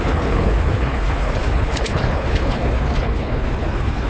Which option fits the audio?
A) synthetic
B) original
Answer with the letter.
A